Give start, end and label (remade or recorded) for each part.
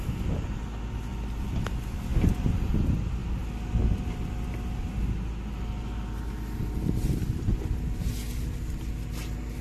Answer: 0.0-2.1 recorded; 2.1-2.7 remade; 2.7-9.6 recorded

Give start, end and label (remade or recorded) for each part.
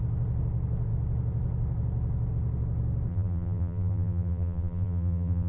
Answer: 0.0-3.1 recorded; 3.1-5.5 remade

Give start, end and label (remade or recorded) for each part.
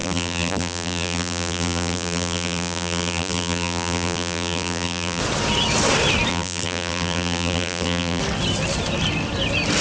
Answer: 0.0-5.2 remade; 5.2-6.3 recorded; 6.3-8.2 remade; 8.2-9.8 recorded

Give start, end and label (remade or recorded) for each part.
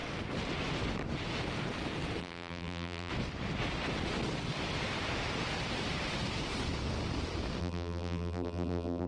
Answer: 0.0-2.2 recorded; 2.2-3.1 remade; 3.1-7.6 recorded; 7.6-9.1 remade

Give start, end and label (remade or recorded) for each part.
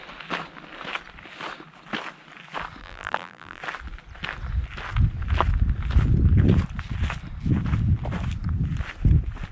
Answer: 0.0-2.8 recorded; 2.8-3.6 remade; 3.6-9.5 recorded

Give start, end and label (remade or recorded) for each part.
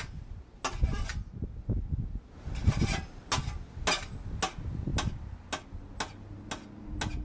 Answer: 0.0-2.6 recorded; 2.6-3.2 remade; 3.2-7.2 recorded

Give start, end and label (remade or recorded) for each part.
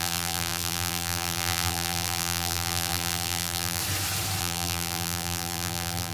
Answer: 0.0-3.8 remade; 3.8-4.4 recorded; 4.4-6.1 remade